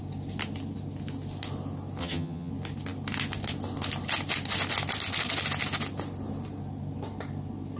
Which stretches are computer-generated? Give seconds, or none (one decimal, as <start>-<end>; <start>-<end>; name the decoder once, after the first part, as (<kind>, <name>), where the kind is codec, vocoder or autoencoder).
2.0-2.5 (vocoder, HiFi-GAN)

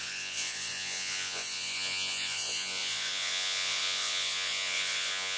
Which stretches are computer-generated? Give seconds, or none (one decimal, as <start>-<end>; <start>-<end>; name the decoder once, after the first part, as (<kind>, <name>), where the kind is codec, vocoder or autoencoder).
0.0-5.4 (vocoder, Vocos)